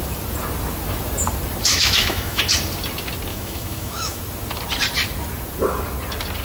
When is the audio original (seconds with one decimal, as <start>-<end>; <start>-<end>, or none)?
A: 0.0-1.7; 2.4-3.3; 4.2-6.4